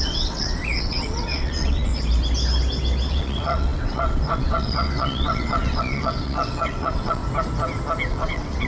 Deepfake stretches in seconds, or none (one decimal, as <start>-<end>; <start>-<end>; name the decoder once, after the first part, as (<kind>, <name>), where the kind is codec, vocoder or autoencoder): 0.0-1.9 (vocoder, WaveNeXt); 3.1-7.2; 8.1-8.7